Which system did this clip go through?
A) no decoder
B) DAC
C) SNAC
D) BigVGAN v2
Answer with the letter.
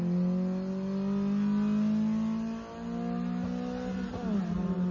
A